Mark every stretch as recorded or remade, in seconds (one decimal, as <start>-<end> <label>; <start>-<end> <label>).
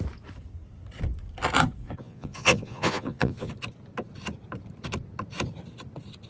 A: 0.0-1.8 recorded; 1.8-3.5 remade; 3.5-6.3 recorded